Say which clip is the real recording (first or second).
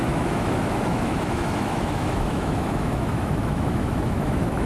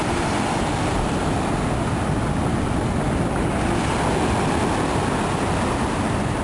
second